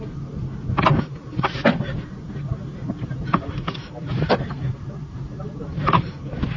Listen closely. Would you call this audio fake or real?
real